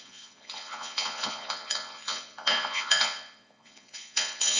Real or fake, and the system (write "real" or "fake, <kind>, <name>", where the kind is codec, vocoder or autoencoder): fake, vocoder, Vocos